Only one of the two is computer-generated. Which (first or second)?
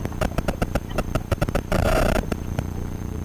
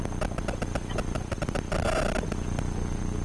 first